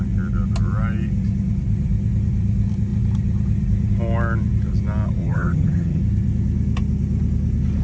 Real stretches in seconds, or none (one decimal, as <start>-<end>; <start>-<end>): 0.0-5.2; 6.0-7.8